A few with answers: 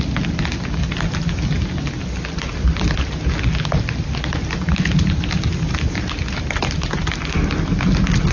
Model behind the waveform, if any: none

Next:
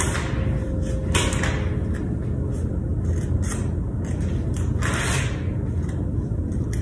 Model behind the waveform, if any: none